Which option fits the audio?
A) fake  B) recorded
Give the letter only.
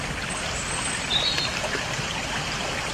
B